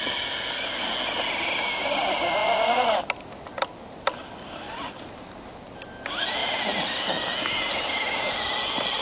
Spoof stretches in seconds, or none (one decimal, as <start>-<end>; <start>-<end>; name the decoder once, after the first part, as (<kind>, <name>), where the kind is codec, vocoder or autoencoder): none